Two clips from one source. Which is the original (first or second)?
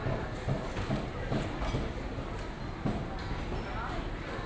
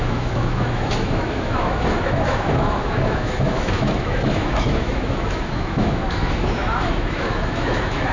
first